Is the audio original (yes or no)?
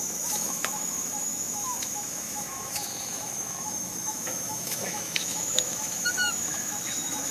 no